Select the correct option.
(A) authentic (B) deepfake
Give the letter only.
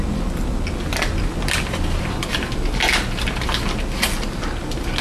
A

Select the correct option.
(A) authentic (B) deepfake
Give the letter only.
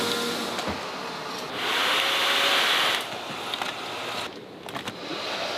A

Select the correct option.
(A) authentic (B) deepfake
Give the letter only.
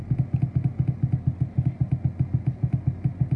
A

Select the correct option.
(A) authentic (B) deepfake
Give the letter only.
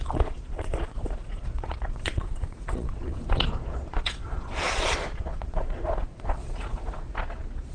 B